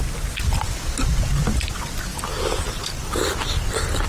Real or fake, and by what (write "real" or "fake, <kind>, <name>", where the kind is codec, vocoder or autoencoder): real